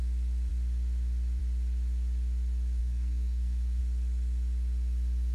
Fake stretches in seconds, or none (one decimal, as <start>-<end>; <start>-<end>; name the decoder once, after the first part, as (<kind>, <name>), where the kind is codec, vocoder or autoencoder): 2.8-3.8 (codec, SNAC)